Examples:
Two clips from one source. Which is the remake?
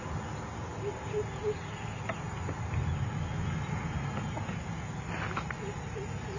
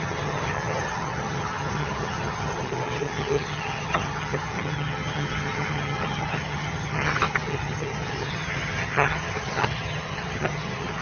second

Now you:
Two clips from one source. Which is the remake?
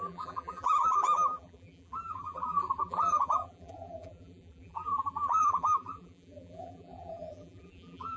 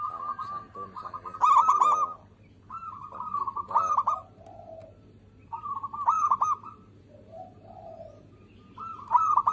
first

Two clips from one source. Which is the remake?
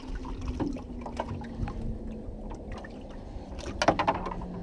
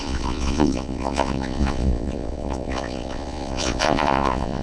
second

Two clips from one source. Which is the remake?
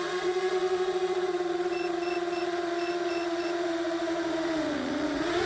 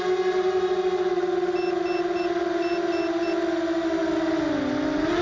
first